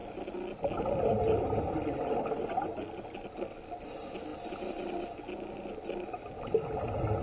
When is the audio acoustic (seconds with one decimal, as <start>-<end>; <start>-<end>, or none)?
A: 0.0-7.2